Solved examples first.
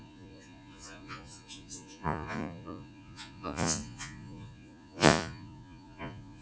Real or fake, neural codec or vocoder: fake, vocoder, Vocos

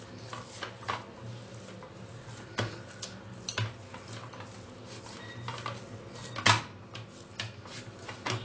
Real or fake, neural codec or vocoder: real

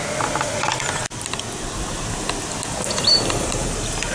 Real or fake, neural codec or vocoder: real